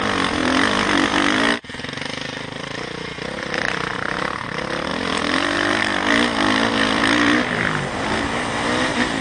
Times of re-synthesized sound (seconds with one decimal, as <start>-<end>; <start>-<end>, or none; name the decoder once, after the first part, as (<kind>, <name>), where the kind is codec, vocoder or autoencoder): 0.4-3.9 (vocoder, BigVGAN v2); 4.9-7.8